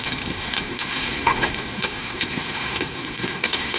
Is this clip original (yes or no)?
no